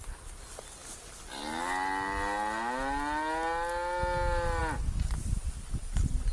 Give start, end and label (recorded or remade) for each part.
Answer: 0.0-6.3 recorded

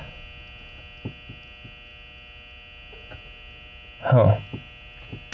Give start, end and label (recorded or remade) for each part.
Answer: 0.0-5.3 recorded

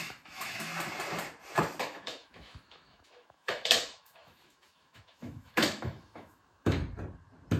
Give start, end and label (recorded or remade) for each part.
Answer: 0.0-0.7 remade; 0.7-1.8 recorded; 1.8-6.8 remade; 6.8-7.6 recorded